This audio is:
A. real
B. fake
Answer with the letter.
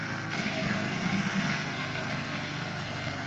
B